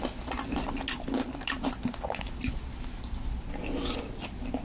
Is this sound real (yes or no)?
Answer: yes